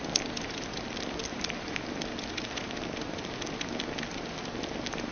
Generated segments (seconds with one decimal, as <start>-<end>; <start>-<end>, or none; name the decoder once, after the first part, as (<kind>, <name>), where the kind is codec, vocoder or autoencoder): none